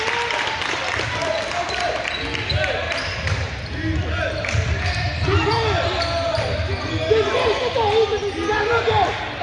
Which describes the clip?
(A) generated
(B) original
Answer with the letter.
B